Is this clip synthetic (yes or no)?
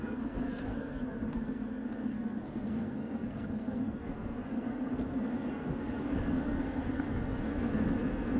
yes